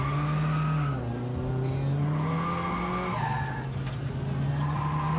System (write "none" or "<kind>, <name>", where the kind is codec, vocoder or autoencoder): none